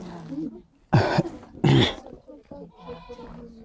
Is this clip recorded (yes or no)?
yes